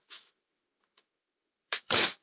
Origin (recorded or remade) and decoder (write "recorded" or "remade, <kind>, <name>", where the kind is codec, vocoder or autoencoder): remade, autoencoder, DAC-VAE